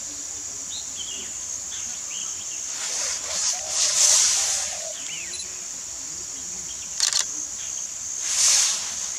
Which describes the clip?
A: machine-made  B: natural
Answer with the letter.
B